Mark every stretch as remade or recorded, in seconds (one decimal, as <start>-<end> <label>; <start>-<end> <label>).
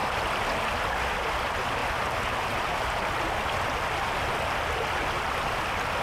0.0-0.7 remade; 0.7-6.0 recorded